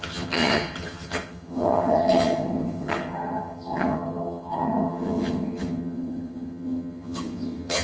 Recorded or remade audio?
remade